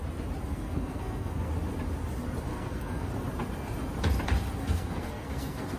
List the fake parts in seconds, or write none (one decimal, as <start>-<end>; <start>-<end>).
0.5-1.5; 2.5-3.1; 4.6-5.8